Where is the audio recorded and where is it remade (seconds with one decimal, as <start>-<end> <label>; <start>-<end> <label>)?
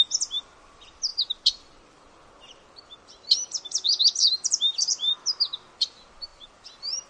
0.0-1.1 recorded; 1.1-3.3 remade; 3.3-6.3 recorded; 6.3-7.1 remade